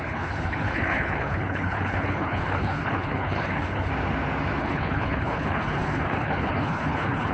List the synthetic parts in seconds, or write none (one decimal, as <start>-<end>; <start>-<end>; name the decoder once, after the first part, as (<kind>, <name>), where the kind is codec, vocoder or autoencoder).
0.0-3.9 (codec, HILCodec); 4.6-7.3